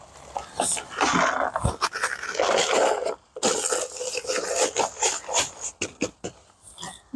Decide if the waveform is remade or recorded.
recorded